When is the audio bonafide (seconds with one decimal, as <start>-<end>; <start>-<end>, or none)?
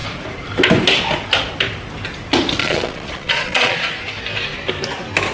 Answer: 0.0-2.6; 3.9-5.3